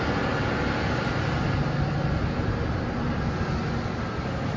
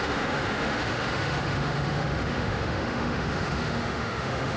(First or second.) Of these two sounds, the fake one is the second